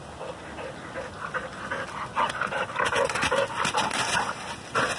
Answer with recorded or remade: recorded